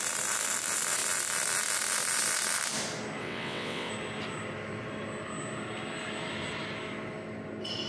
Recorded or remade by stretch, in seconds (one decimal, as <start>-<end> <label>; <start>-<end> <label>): 0.0-3.2 recorded; 3.2-3.9 remade; 3.9-7.9 recorded